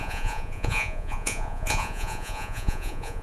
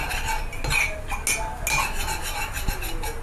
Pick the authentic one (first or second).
second